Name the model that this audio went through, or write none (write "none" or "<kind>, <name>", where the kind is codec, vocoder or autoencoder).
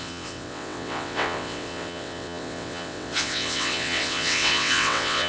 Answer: vocoder, WaveNeXt